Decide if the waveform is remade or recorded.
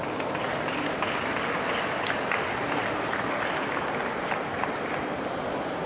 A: recorded